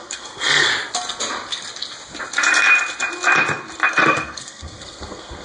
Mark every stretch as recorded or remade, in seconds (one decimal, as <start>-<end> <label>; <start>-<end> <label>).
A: 0.0-0.7 remade; 0.7-3.9 recorded; 3.9-5.4 remade